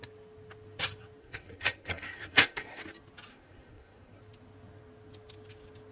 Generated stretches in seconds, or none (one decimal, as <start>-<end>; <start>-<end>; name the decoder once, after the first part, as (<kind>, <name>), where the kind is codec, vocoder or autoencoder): 1.2-2.8 (codec, SNAC); 3.3-4.2